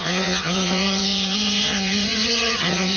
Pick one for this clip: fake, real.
fake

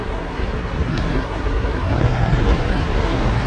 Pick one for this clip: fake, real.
fake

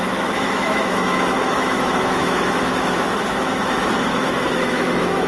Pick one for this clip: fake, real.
fake